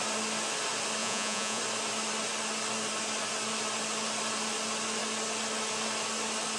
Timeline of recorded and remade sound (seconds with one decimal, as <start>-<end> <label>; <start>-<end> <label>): 0.0-1.0 recorded; 1.0-1.6 remade; 1.6-6.6 recorded